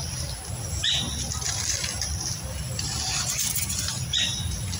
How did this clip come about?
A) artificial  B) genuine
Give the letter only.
A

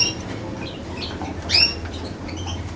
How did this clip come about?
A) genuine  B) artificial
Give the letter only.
B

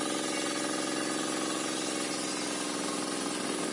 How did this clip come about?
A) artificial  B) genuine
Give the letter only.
B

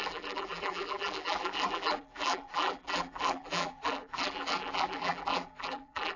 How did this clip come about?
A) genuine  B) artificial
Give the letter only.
B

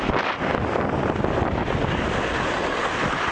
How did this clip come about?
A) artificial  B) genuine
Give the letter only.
A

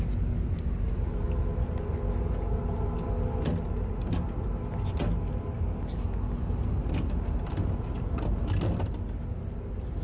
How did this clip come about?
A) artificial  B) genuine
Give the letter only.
B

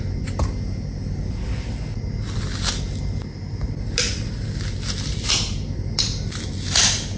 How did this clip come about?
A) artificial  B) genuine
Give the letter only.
B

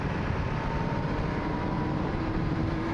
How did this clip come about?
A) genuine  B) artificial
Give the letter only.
B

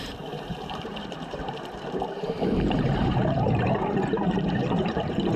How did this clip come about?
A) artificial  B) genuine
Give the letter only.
A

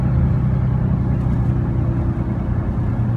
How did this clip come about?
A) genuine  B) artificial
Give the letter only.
A